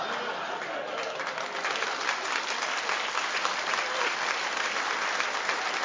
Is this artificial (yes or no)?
no